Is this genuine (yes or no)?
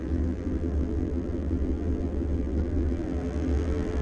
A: no